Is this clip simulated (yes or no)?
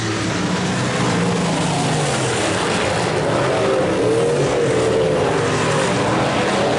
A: no